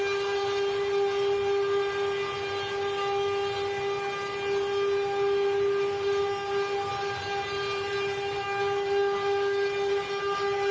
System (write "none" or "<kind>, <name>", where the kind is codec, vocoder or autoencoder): none